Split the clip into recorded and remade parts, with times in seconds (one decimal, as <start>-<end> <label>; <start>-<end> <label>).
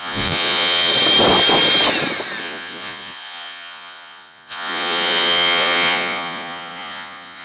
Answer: 0.0-0.9 remade; 0.9-2.4 recorded; 2.4-7.4 remade